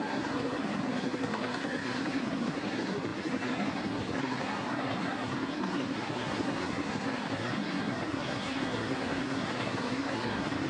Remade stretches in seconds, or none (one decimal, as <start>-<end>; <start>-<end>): 0.0-10.7

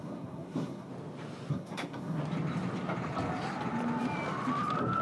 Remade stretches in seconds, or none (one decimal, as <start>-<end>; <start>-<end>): 0.0-0.9; 1.5-2.2

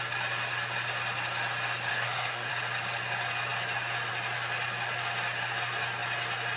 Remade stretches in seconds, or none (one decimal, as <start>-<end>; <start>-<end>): 1.9-2.5